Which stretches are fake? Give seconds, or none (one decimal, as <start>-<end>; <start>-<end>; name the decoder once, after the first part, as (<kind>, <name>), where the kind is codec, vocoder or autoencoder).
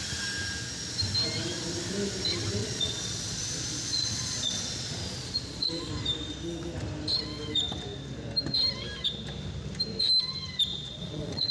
2.6-5.9 (vocoder, Vocos); 10.7-11.5